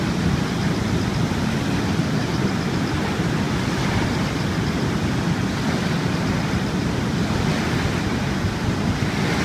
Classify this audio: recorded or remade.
recorded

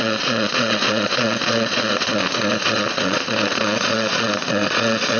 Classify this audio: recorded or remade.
remade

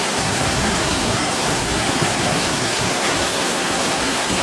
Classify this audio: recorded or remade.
remade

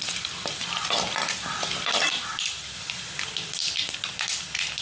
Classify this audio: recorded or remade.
remade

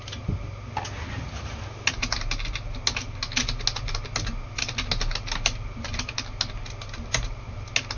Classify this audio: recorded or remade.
recorded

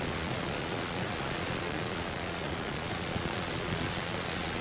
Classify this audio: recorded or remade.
remade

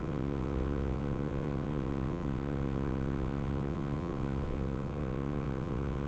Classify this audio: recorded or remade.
remade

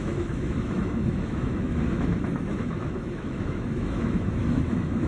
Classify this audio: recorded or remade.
remade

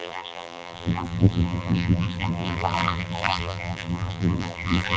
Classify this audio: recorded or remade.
remade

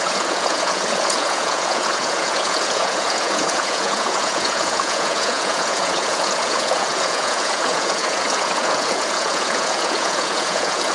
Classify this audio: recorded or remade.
remade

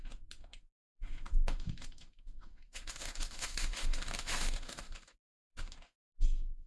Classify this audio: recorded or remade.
remade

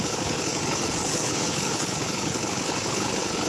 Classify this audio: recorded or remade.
remade